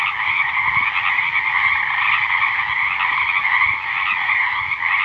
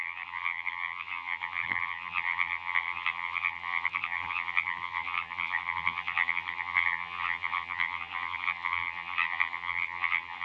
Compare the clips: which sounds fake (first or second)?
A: second